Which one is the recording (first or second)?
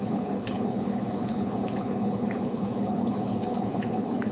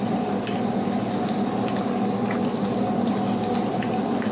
second